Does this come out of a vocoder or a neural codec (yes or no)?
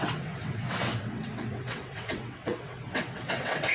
yes